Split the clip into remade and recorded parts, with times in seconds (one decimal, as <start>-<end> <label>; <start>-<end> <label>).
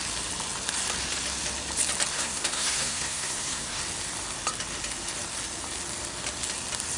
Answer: 0.0-2.1 recorded; 2.1-3.8 remade; 3.8-7.0 recorded